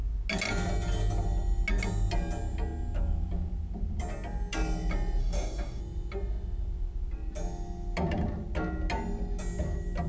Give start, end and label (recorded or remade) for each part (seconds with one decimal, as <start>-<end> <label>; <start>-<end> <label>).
0.0-5.2 recorded; 5.2-5.8 remade; 5.8-10.1 recorded